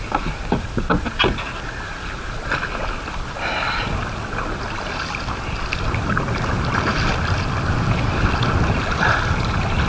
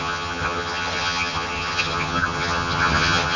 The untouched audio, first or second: first